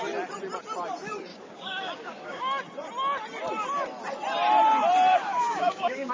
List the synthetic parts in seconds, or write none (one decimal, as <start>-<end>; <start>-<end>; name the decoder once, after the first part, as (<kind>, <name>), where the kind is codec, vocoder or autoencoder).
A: 1.3-2.4 (codec, DAC); 5.1-6.1